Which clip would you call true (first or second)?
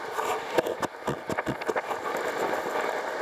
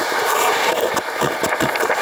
first